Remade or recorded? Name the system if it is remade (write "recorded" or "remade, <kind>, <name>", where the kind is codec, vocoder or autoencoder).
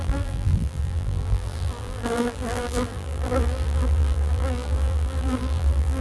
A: remade, vocoder, BigVGAN v2